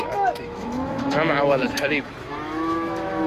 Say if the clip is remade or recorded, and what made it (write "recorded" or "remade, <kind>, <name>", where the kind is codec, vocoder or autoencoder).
remade, autoencoder, DAC-VAE